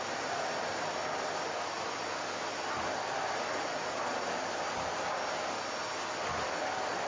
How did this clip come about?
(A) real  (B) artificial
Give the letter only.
A